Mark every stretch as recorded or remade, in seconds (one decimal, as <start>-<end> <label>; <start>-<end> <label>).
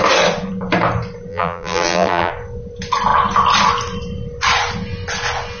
0.0-1.3 recorded; 1.3-2.3 remade; 2.3-5.6 recorded